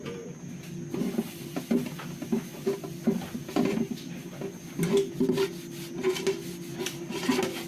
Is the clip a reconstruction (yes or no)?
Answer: no